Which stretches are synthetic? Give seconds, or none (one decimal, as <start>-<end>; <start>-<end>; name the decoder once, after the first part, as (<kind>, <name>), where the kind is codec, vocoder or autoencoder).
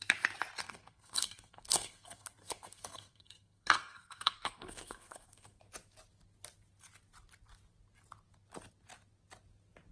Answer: 0.6-5.6 (codec, SNAC)